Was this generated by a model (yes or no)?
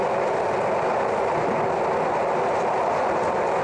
no